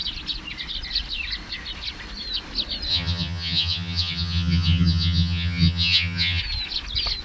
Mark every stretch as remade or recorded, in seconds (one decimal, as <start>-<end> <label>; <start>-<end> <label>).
0.0-2.9 recorded; 2.9-6.4 remade; 6.4-7.2 recorded